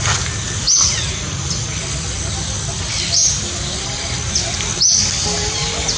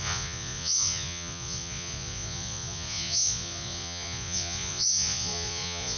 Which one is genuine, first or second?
first